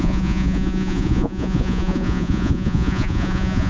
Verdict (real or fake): fake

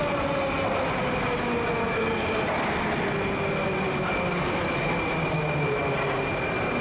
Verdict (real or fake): real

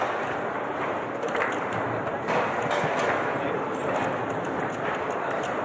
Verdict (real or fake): real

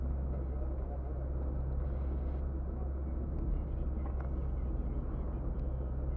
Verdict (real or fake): real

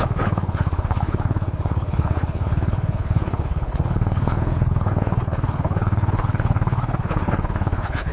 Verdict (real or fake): fake